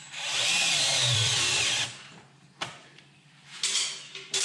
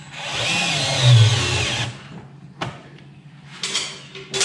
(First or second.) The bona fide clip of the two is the second